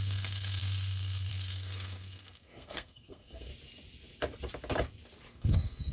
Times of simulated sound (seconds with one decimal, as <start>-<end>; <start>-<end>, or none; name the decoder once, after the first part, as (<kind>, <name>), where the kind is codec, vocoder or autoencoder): 0.0-3.5 (codec, SNAC); 5.3-5.9